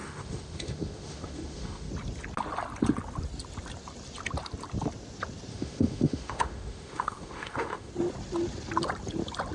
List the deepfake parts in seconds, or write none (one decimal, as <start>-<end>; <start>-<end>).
0.0-1.9; 5.5-7.9